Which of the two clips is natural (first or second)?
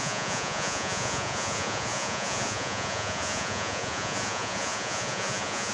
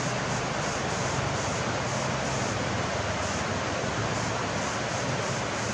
second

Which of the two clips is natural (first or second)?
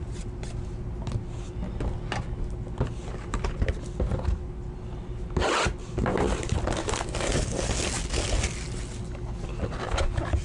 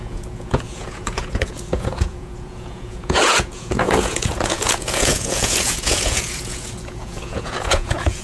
first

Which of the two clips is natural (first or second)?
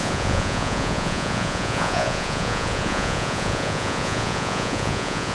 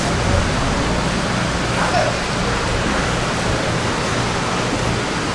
second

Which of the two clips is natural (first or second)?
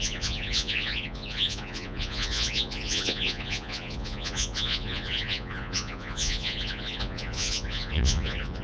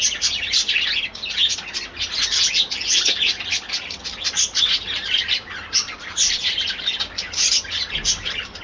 second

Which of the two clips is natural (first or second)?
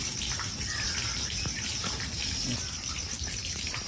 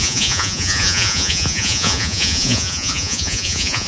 first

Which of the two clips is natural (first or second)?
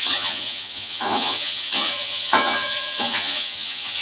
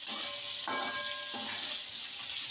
second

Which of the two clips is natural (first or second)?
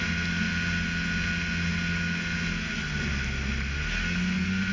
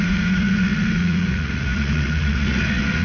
first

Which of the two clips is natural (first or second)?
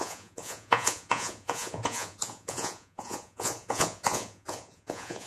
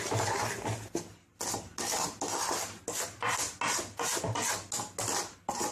second